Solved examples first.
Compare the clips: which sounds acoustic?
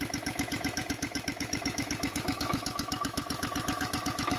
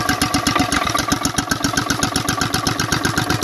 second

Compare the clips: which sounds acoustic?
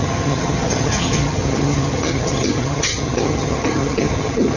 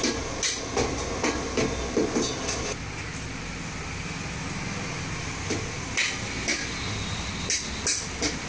second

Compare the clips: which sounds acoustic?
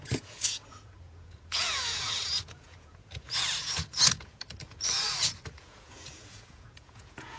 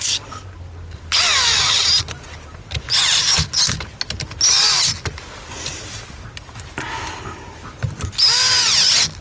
second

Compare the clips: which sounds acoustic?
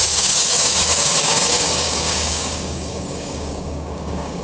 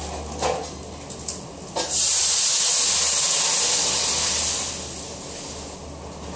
second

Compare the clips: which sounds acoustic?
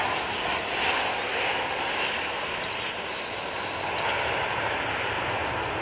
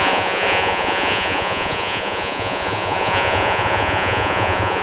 first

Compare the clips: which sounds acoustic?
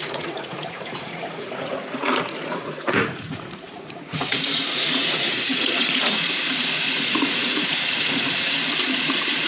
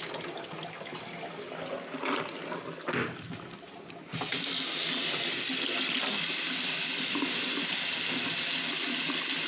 second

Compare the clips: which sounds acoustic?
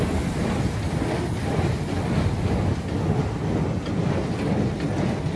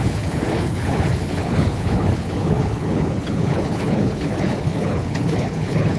first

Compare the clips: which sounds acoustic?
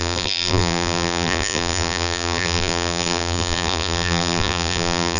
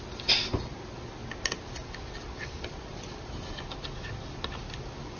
second